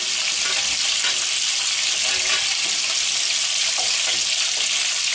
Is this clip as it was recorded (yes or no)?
yes